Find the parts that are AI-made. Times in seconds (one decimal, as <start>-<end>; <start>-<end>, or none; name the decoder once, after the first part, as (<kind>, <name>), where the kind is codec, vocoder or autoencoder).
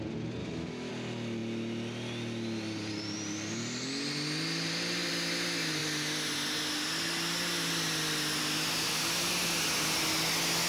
0.4-0.9 (autoencoder, DAC-VAE)